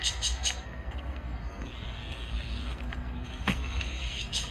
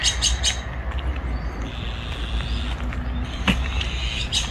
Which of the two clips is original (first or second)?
second